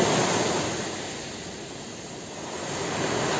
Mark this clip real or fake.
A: real